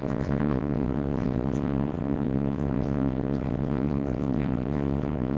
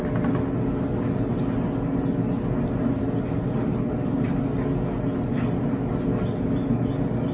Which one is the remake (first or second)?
first